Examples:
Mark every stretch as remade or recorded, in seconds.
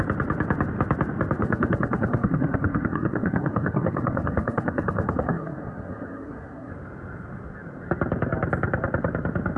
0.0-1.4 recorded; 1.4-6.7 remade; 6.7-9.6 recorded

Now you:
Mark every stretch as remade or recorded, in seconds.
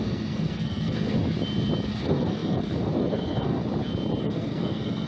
0.0-1.2 remade; 1.2-2.0 recorded; 2.0-3.6 remade; 3.6-4.2 recorded; 4.2-5.1 remade